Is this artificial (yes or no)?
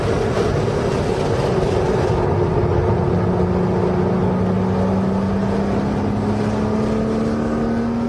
no